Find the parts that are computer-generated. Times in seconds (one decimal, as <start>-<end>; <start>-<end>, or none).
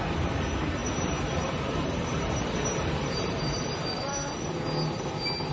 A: 0.8-4.1